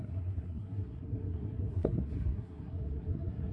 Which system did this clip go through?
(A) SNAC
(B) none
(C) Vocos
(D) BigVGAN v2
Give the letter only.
A